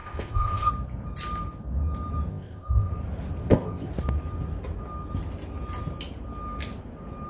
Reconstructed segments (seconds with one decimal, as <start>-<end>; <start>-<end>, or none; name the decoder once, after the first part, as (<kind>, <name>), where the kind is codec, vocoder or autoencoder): 0.0-0.7 (codec, ZipCodec); 2.3-2.9; 3.4-3.9